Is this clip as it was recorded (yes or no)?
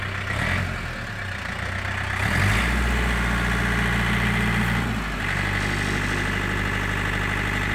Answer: yes